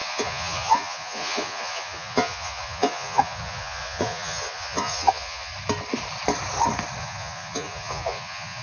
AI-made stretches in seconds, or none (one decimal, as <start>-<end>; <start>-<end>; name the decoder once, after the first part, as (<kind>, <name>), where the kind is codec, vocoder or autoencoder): 0.0-5.5 (vocoder, Vocos); 7.0-8.6